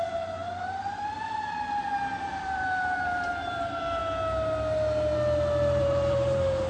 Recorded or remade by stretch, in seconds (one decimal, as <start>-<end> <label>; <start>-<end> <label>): 0.0-4.0 remade; 4.0-5.8 recorded; 5.8-6.7 remade